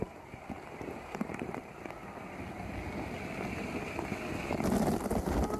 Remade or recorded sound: recorded